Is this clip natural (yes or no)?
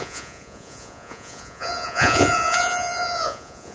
no